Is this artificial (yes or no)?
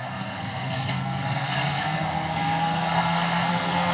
yes